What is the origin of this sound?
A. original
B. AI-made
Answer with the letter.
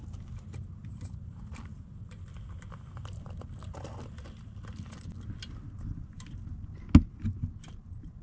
A